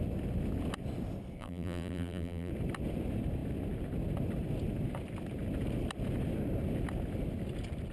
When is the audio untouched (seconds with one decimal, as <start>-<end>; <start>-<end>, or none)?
0.0-1.4; 2.5-7.9